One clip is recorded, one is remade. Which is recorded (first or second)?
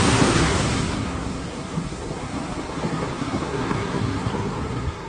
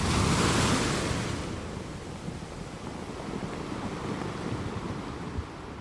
second